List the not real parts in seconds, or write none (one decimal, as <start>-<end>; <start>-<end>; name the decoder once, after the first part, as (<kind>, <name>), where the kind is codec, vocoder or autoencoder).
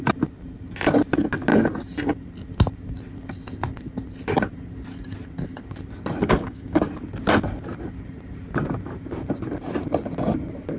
6.2-6.9 (codec, DAC)